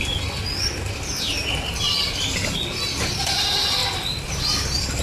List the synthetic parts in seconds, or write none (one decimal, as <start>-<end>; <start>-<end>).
none